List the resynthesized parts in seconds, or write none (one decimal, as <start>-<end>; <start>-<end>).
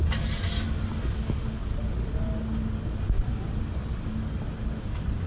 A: none